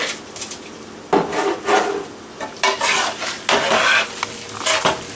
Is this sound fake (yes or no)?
no